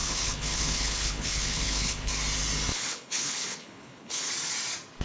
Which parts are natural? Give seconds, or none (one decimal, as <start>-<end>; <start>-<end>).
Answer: 2.1-2.7; 4.3-5.0